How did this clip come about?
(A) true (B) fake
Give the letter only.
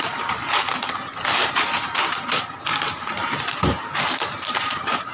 B